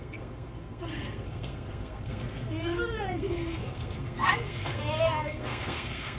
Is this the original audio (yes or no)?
no